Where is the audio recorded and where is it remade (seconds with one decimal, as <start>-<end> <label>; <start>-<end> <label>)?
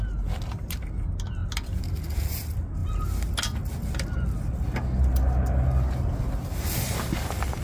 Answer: 0.0-7.6 recorded